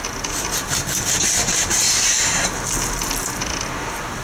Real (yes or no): yes